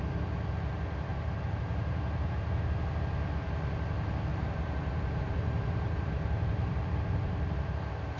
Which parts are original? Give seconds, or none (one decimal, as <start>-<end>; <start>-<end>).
0.0-1.1; 2.9-4.3; 7.3-8.2